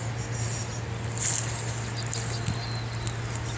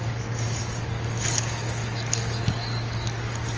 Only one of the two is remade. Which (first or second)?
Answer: second